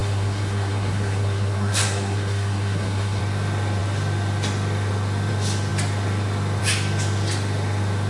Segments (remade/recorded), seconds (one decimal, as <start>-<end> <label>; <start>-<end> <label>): 0.0-3.2 remade; 3.2-8.1 recorded